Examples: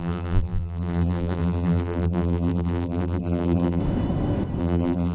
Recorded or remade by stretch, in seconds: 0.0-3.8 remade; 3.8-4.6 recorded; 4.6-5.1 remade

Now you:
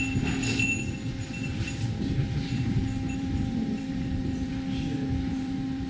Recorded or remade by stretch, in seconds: 0.0-1.4 recorded; 1.4-4.5 remade; 4.5-5.3 recorded; 5.3-5.9 remade

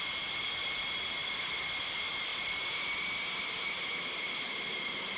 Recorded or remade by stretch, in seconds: 0.0-2.3 remade; 2.3-4.3 recorded; 4.3-5.2 remade

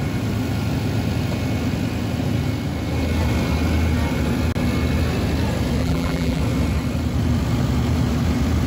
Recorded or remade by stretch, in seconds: 0.0-5.8 recorded; 5.8-6.4 remade; 6.4-8.7 recorded

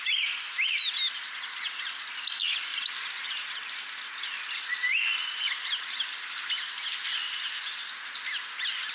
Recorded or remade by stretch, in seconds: 0.0-2.7 recorded; 2.7-5.3 remade; 5.3-8.9 recorded

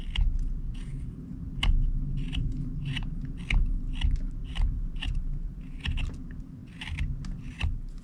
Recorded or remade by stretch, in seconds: 0.0-4.4 recorded; 4.4-5.6 remade; 5.6-8.0 recorded

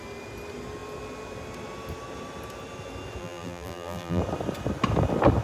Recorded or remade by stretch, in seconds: 0.0-3.2 recorded; 3.2-4.2 remade; 4.2-5.4 recorded